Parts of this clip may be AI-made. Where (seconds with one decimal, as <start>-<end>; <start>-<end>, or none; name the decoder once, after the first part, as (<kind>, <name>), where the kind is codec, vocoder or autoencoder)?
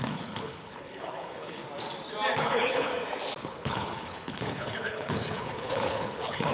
0.0-1.6 (codec, HILCodec); 2.4-2.9; 3.4-6.5